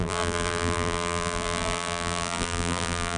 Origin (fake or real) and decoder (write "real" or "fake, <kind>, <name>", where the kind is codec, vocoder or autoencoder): fake, vocoder, BigVGAN v2